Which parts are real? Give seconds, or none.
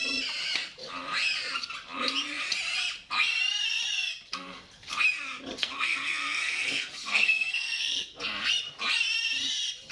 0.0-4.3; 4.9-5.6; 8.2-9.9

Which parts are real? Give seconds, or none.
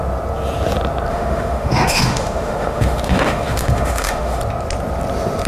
0.0-1.1; 4.4-5.5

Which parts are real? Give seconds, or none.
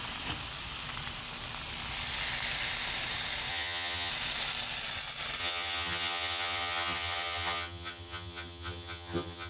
0.0-3.5; 4.1-5.4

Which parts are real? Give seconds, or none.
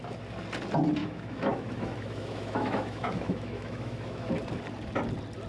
0.0-1.0; 4.3-5.5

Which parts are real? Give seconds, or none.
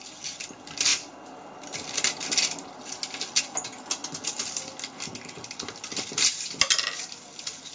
0.0-7.7